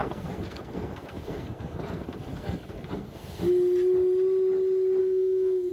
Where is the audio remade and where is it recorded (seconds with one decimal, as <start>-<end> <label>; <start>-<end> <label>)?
0.0-3.4 remade; 3.4-5.0 recorded; 5.0-5.7 remade